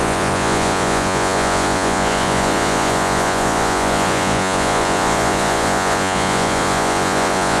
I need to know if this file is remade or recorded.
remade